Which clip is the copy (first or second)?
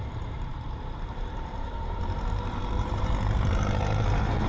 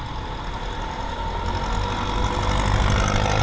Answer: first